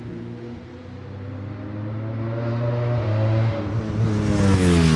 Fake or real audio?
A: real